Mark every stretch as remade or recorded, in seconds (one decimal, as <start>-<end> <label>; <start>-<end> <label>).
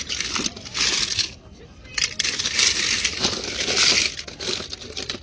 0.0-5.2 recorded